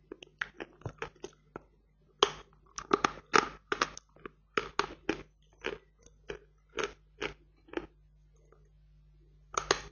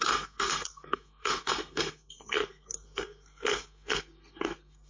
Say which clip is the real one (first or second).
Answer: first